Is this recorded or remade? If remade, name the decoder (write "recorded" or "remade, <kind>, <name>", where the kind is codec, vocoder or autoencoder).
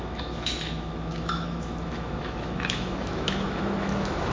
remade, autoencoder, DAC-VAE